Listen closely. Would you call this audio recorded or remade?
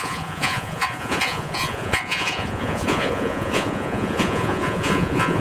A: remade